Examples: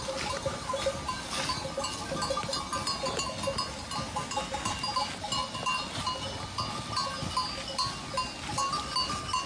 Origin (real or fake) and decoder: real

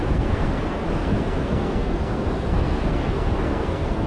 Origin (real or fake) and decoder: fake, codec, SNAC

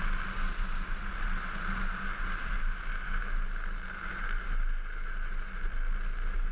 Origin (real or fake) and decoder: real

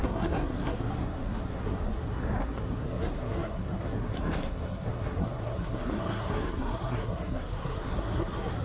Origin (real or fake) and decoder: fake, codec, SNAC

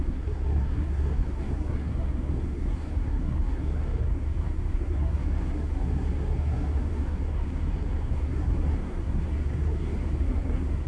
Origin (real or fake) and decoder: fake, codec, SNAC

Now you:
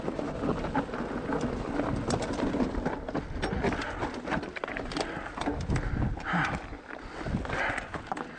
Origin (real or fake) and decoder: real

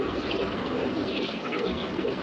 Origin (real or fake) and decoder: fake, codec, SNAC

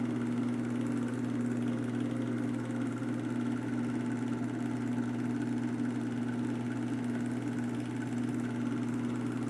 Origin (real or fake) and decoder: real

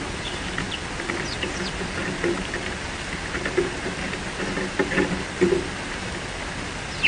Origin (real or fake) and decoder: real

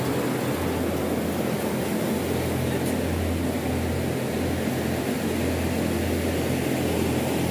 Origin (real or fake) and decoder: real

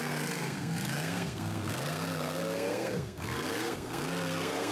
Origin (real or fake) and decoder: fake, codec, SNAC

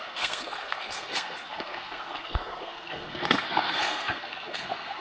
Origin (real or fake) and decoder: fake, codec, SNAC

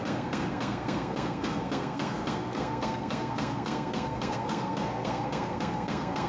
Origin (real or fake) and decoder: fake, codec, SNAC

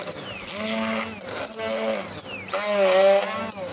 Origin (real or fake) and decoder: real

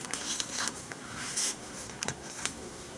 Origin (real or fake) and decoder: fake, codec, SNAC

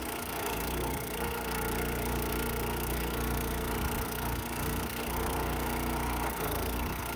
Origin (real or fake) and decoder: fake, codec, SNAC